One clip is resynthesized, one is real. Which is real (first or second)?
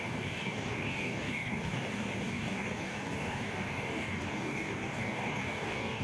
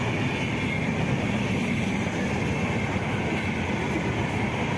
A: second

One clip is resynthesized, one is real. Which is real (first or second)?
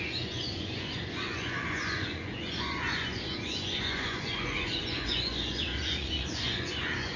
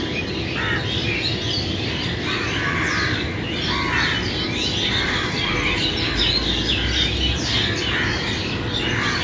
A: second